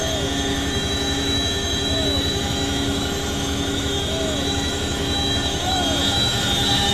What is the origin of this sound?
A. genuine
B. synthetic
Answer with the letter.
B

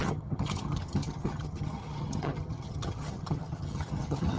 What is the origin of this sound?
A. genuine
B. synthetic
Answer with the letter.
B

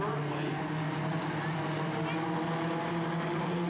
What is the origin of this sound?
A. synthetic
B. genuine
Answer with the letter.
B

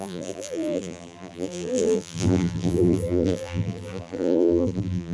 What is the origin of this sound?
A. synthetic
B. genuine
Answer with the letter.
A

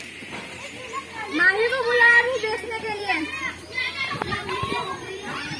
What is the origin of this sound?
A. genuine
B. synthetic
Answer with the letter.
B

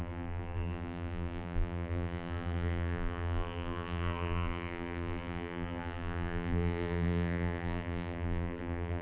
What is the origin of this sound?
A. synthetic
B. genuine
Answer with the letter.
A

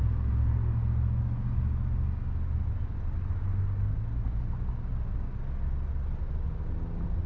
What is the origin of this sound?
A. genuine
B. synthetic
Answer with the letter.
A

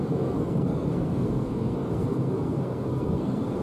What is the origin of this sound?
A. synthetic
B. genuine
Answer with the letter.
A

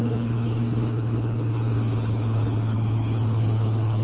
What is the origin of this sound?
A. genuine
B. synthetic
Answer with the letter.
B